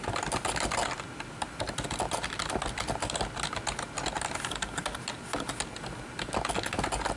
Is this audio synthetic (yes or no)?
no